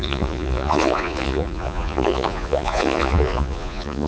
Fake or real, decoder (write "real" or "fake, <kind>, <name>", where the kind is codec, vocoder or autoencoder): fake, vocoder, Vocos